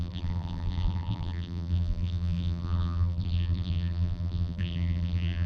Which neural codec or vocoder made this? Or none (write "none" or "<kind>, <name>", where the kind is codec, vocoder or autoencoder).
vocoder, BigVGAN v2